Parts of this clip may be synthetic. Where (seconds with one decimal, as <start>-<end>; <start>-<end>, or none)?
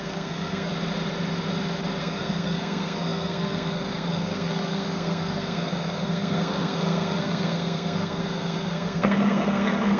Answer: 0.0-0.7; 2.0-10.0